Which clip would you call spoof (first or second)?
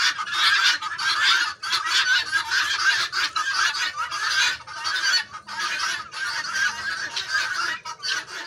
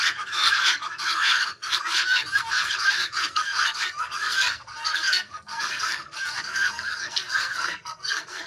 second